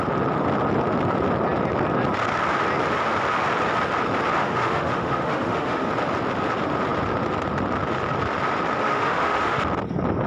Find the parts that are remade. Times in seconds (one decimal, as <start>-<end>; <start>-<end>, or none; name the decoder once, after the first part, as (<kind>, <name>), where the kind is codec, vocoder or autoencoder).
4.4-5.9 (autoencoder, DAC-VAE); 8.8-9.6